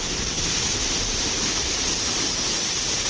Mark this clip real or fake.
fake